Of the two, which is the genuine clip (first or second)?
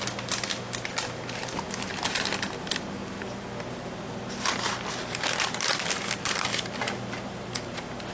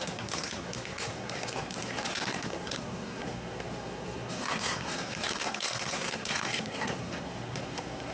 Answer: first